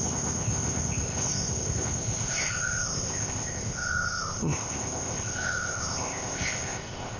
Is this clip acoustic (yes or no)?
no